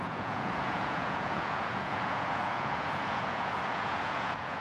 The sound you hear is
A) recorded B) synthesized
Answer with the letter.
B